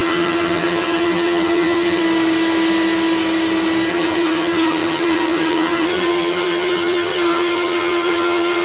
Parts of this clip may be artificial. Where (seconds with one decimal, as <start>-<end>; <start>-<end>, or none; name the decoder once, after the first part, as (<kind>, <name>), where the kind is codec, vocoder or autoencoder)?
0.0-2.0 (vocoder, HiFi-GAN); 3.9-8.6